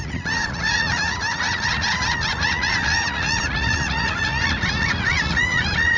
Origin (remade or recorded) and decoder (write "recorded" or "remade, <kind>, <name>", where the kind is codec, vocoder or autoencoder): remade, vocoder, Vocos